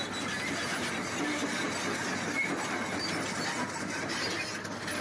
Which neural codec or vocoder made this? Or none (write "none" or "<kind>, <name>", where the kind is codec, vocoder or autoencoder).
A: none